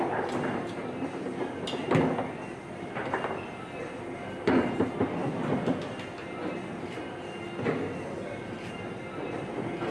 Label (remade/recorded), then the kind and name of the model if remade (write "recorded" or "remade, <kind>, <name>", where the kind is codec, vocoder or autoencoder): recorded